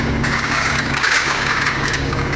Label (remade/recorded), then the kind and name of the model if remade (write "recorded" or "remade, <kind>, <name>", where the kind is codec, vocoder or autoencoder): remade, codec, DAC